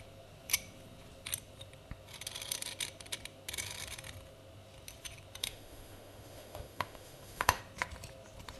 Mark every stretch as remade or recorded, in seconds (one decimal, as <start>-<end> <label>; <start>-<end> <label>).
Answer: 0.0-5.4 recorded; 5.4-7.6 remade; 7.6-8.6 recorded